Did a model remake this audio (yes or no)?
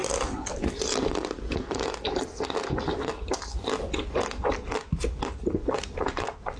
no